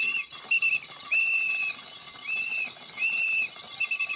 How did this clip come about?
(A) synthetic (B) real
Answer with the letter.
B